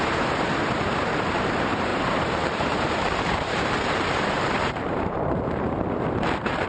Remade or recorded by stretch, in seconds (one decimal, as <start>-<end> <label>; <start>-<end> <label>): 0.0-6.7 remade

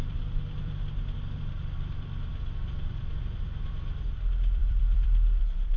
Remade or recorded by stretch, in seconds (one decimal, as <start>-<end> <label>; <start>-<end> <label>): 0.0-5.8 remade

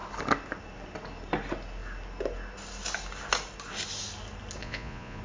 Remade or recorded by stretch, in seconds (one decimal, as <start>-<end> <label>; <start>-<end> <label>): 0.0-4.6 recorded; 4.6-5.2 remade